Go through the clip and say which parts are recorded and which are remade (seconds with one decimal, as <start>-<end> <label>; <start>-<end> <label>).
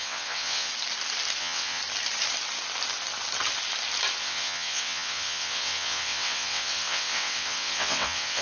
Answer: 0.0-0.7 remade; 0.7-1.4 recorded; 1.4-1.8 remade; 1.8-4.2 recorded; 4.2-8.4 remade